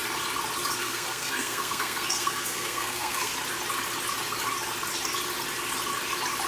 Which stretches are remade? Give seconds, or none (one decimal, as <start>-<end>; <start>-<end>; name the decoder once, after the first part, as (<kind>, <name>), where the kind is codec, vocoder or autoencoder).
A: 0.8-3.3 (codec, SNAC)